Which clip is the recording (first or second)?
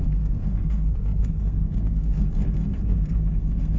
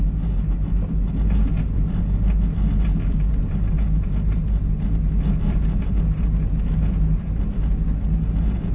second